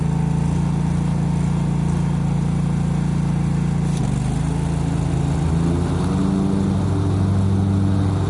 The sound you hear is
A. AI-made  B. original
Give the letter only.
B